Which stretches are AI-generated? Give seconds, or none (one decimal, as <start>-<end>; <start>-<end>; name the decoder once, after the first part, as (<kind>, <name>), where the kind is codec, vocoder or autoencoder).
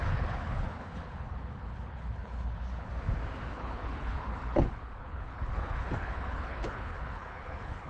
0.0-2.9 (codec, HILCodec); 3.5-7.9